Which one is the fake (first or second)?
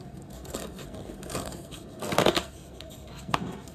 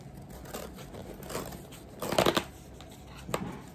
first